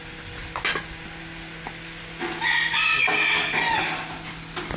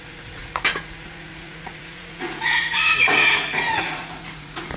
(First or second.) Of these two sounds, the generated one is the second